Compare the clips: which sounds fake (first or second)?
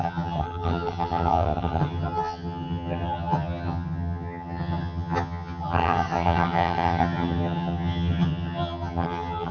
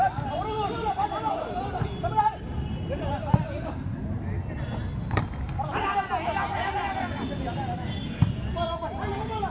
first